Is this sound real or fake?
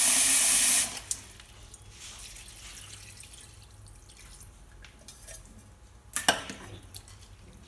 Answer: real